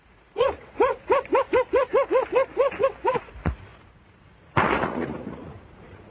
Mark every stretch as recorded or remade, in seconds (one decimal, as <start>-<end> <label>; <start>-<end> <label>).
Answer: 0.0-0.9 remade; 0.9-3.3 recorded; 3.3-6.1 remade